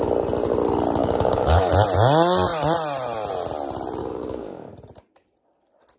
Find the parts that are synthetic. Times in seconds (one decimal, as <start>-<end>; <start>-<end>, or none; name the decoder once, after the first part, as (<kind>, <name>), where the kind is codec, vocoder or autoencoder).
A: 1.0-1.7 (codec, DAC); 4.0-4.7